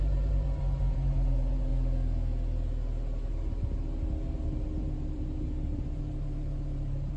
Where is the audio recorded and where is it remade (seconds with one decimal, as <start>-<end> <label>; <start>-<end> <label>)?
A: 0.0-1.7 remade; 1.7-4.8 recorded; 4.8-7.2 remade